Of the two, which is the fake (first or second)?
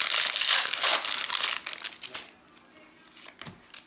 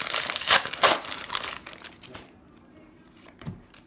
second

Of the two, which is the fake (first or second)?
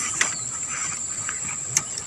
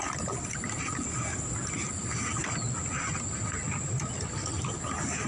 first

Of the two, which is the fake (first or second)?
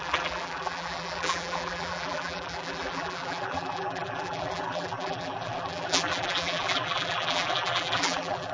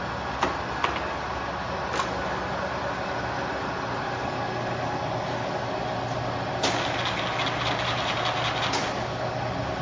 first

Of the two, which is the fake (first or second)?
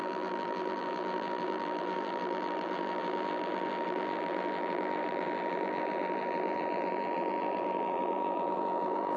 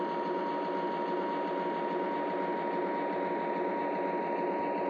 first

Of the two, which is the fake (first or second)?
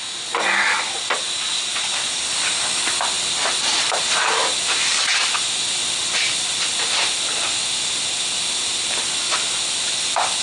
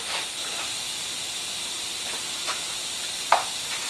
second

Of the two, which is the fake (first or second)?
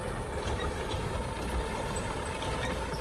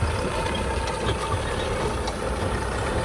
first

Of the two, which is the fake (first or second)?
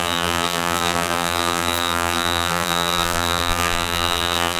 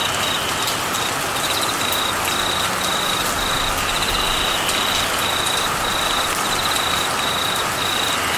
first